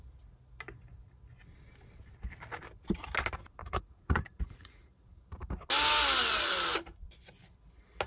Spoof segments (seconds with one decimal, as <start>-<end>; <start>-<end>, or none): 3.6-5.2